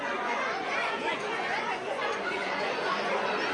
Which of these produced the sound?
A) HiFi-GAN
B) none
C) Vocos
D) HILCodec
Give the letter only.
C